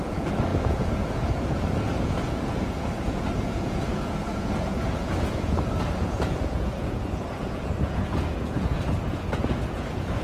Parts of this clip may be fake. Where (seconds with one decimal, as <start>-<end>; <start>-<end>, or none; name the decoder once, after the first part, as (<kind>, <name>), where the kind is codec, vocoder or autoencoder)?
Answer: 0.0-10.2 (vocoder, Vocos)